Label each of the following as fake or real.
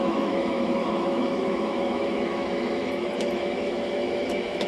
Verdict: fake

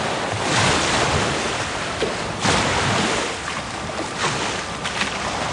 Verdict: real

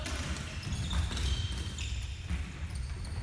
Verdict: real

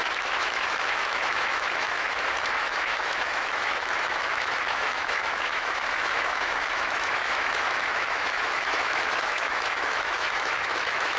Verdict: fake